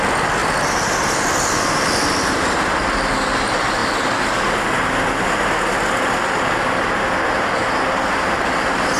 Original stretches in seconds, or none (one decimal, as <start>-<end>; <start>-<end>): 0.0-9.0